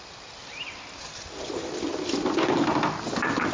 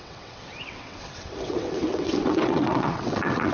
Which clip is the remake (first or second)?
second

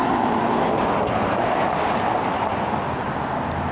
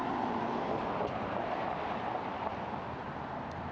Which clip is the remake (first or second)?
second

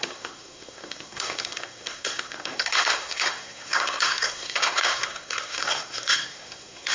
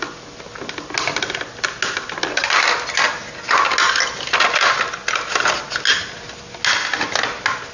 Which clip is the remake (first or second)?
first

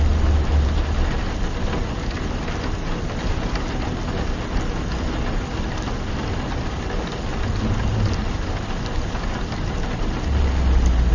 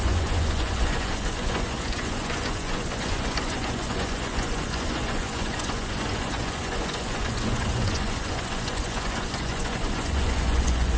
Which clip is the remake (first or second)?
second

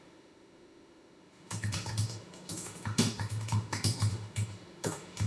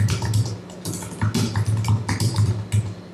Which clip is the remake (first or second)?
first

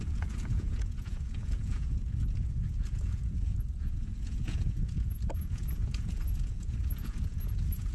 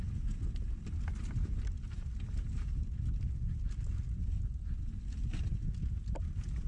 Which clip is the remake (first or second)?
first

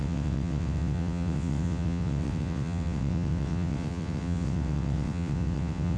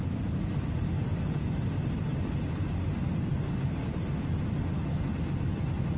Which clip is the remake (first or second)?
first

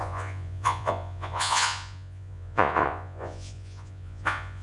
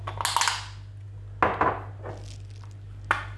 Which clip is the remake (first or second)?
first